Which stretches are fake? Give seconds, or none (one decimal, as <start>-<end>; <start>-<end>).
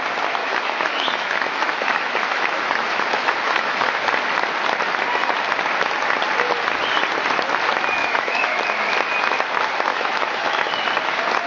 0.4-3.9; 8.0-8.6; 9.9-10.7